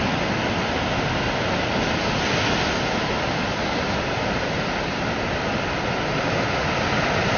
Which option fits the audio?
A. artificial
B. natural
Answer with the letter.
B